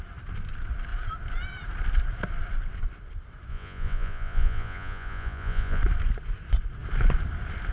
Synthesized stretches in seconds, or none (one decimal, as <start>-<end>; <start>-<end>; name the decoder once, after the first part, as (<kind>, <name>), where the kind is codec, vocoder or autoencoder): 3.5-5.8 (vocoder, Vocos)